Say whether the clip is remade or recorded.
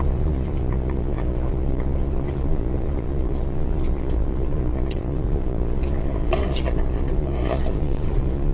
remade